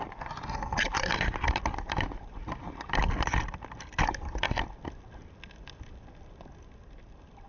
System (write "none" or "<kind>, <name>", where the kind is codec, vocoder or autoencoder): none